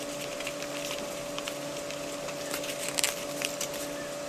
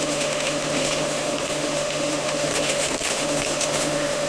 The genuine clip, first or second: first